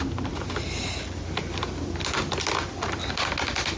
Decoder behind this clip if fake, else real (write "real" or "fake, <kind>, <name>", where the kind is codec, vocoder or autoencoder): real